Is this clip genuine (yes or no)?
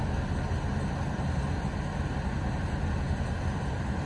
yes